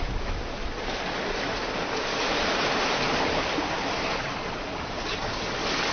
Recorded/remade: recorded